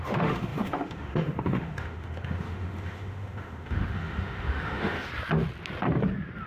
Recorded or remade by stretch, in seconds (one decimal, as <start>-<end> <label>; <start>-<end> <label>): 0.0-5.1 remade; 5.1-6.5 recorded